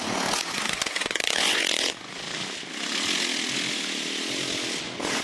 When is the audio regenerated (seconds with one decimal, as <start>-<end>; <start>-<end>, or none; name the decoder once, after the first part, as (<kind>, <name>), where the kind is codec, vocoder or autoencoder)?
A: 0.0-2.2 (vocoder, Vocos); 4.8-5.2